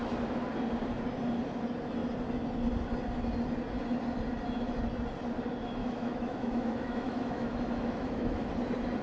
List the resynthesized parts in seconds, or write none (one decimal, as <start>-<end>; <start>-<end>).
5.8-8.5